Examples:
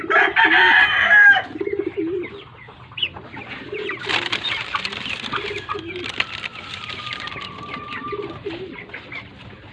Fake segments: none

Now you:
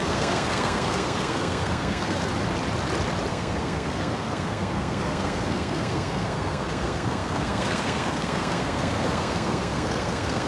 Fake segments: 0.0-2.3 (codec, SNAC); 3.3-10.5

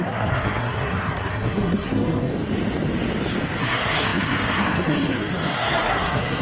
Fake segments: 0.0-2.3 (codec, SNAC); 3.6-6.4

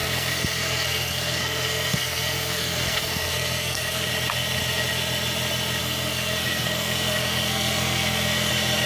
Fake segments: 0.0-4.1 (codec, SNAC); 5.8-8.5

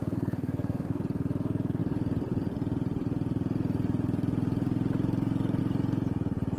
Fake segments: 0.0-1.0 (codec, SNAC)

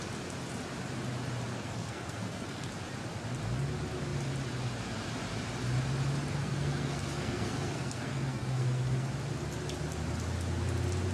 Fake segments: 1.5-2.7 (codec, SNAC); 6.4-9.1